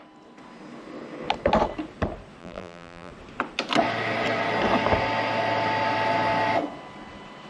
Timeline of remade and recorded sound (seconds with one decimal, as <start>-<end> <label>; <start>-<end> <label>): 0.0-2.4 recorded; 2.4-3.1 remade; 3.1-7.5 recorded